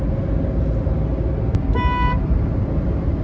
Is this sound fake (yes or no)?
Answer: no